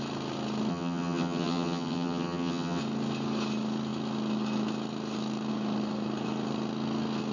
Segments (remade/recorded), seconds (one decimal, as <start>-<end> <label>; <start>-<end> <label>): 0.0-0.7 recorded; 0.7-2.8 remade; 2.8-7.3 recorded